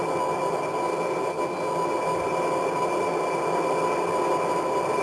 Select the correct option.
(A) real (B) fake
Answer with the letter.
A